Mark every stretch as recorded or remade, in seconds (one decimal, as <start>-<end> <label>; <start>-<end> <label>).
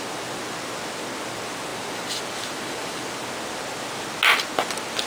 0.0-1.7 recorded; 1.7-3.3 remade; 3.3-5.1 recorded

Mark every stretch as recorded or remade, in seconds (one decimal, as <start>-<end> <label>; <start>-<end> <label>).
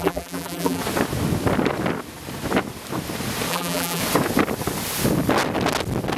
0.0-0.8 remade; 0.8-3.5 recorded; 3.5-4.0 remade; 4.0-6.2 recorded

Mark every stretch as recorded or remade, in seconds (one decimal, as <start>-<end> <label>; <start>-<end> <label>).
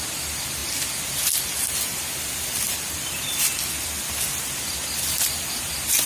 0.0-6.1 recorded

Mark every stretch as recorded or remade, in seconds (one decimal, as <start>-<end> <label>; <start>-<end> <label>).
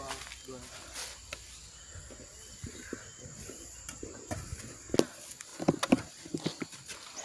0.0-2.5 recorded; 2.5-4.4 remade; 4.4-7.2 recorded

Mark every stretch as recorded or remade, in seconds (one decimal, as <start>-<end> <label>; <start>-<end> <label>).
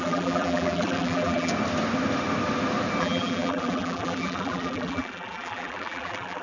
0.0-1.5 remade; 1.5-3.0 recorded; 3.0-6.4 remade